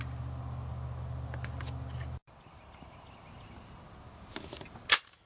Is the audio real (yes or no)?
yes